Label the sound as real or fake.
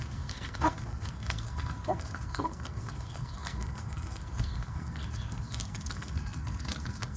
fake